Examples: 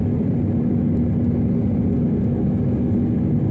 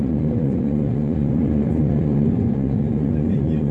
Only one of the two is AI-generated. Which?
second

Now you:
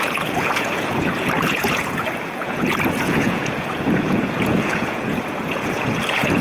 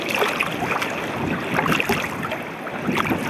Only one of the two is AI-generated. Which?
first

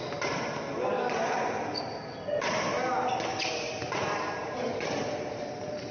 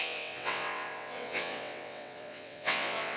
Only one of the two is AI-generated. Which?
second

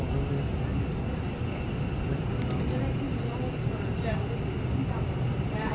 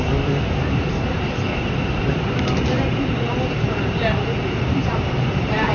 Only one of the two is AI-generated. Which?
second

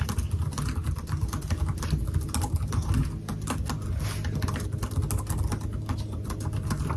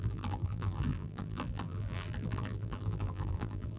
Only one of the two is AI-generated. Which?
second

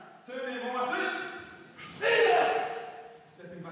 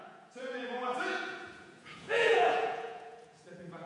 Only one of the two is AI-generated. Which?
second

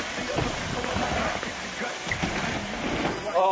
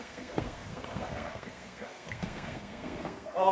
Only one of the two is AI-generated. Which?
second